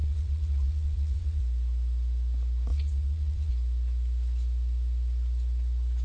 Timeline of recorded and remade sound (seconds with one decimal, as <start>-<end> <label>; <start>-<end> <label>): 0.0-1.4 remade; 1.4-2.7 recorded; 2.7-3.5 remade; 3.5-6.0 recorded